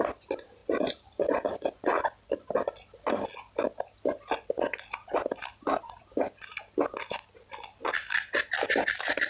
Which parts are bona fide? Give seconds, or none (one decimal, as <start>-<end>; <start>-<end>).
0.0-0.6; 1.6-3.3; 6.9-9.3